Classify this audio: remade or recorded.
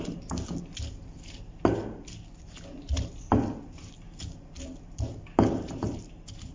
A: recorded